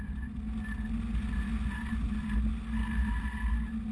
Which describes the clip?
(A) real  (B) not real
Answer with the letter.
A